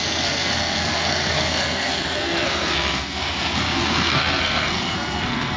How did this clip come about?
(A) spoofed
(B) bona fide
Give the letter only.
A